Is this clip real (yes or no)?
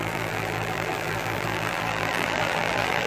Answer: no